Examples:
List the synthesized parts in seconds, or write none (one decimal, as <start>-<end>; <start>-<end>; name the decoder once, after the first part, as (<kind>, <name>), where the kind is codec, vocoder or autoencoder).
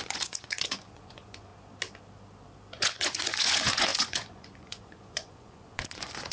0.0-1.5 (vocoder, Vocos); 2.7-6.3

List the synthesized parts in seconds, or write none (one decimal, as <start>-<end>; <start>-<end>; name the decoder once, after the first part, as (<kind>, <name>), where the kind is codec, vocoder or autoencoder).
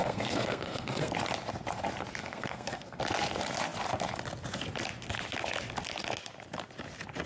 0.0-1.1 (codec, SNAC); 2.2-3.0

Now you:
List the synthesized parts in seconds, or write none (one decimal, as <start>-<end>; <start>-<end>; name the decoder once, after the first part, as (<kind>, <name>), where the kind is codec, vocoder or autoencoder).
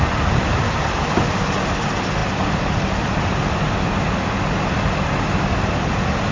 none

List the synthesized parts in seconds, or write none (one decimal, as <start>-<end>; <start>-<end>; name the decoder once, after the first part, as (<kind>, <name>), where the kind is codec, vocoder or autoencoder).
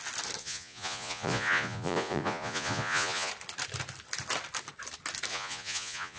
0.4-3.3 (vocoder, Vocos); 5.3-6.2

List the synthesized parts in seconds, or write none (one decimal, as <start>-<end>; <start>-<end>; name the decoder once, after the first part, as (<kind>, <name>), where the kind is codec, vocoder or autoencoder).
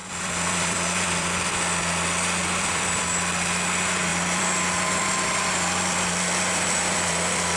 0.0-1.5 (vocoder, BigVGAN v2); 2.4-3.0; 4.1-7.6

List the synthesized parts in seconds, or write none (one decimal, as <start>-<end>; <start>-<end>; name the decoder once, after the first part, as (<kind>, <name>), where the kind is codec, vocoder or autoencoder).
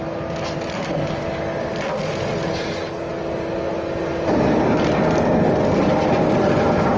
none